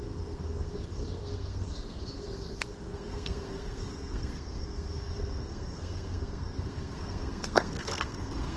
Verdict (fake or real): fake